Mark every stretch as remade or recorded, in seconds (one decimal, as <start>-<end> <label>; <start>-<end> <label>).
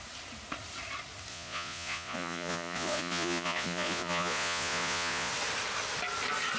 0.0-1.3 recorded; 1.3-5.3 remade; 5.3-6.6 recorded